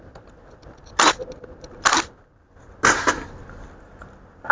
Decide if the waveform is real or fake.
real